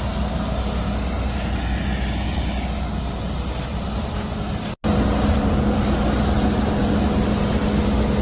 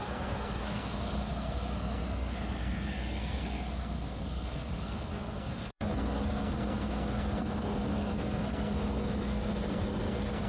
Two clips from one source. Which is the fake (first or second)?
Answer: second